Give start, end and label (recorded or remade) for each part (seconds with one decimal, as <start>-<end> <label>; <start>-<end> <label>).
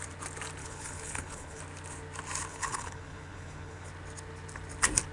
0.0-0.6 recorded; 0.6-1.6 remade; 1.6-2.5 recorded; 2.5-3.9 remade; 3.9-5.1 recorded